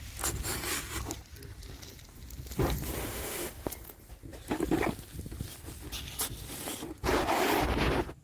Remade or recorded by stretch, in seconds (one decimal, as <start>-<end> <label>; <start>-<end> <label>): 0.0-3.0 recorded; 3.0-3.7 remade; 3.7-8.2 recorded